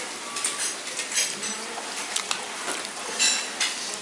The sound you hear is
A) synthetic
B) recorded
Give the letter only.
B